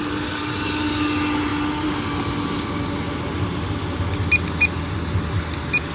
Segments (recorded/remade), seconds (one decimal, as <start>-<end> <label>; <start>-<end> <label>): 0.0-5.9 recorded